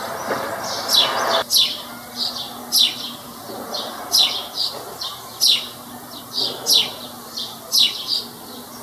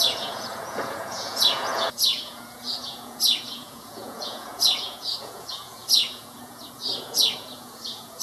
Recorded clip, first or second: first